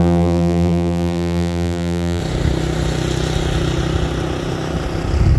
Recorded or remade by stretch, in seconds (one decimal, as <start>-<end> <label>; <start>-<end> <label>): 0.0-2.2 remade; 2.2-5.4 recorded